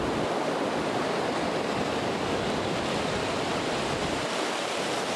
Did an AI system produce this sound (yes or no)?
no